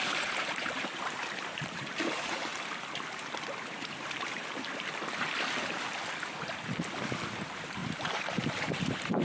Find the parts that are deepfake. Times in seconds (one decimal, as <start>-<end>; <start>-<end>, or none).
0.0-2.5; 7.2-9.2